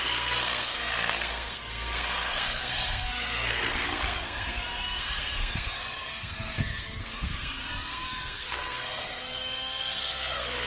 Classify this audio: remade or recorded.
remade